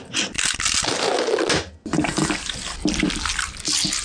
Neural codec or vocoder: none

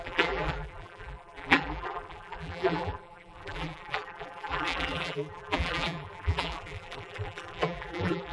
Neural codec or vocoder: vocoder, BigVGAN v2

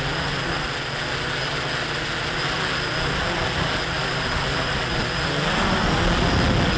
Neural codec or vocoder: none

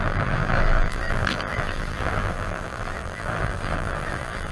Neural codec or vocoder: vocoder, BigVGAN v2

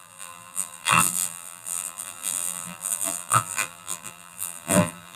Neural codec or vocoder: vocoder, BigVGAN v2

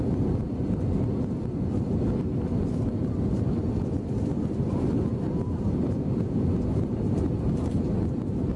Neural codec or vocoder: vocoder, BigVGAN v2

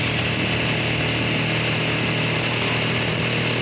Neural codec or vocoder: none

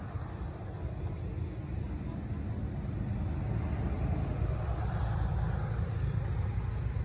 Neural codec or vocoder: none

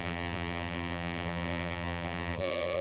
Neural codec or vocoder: vocoder, BigVGAN v2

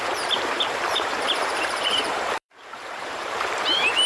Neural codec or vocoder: vocoder, BigVGAN v2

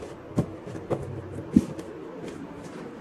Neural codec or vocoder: vocoder, BigVGAN v2